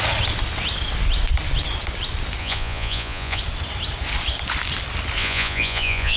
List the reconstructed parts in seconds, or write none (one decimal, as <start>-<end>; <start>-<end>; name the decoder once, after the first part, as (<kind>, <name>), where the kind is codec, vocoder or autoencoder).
2.4-3.4 (vocoder, Vocos); 5.2-6.2